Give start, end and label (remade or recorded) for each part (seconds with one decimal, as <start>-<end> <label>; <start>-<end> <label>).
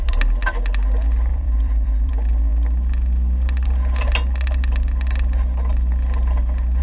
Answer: 0.0-1.3 recorded; 1.3-2.1 remade; 2.1-6.8 recorded